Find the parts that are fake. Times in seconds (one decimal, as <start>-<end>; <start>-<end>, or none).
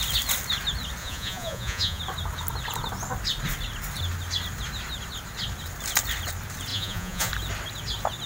1.0-2.0; 6.7-7.3